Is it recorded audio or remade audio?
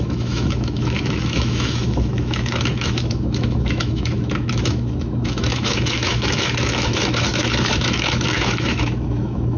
remade